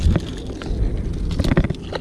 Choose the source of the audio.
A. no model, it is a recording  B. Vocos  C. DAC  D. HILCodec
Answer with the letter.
A